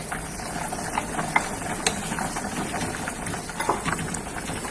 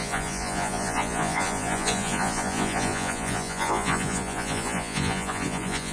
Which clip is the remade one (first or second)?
second